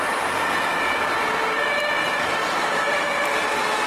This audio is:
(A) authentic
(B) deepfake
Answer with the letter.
A